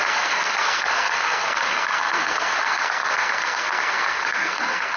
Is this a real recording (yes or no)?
no